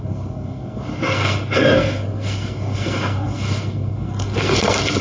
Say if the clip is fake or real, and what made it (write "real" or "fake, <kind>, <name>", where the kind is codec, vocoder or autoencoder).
fake, codec, SNAC